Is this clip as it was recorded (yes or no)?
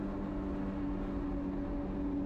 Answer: yes